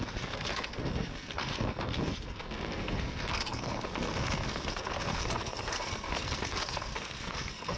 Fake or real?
fake